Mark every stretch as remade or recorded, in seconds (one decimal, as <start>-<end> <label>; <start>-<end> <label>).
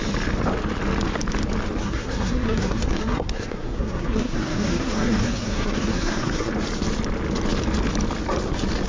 0.0-1.8 recorded; 1.8-6.5 remade; 6.5-8.9 recorded